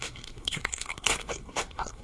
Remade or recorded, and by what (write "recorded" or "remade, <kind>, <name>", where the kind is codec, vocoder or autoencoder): remade, codec, SNAC